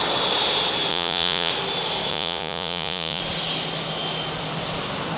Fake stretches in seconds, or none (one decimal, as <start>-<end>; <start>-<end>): 0.9-1.5; 2.1-3.2